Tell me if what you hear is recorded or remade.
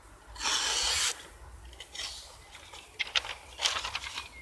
recorded